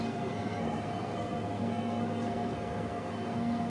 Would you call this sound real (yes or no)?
no